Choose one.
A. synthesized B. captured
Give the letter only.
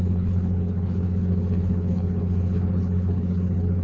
A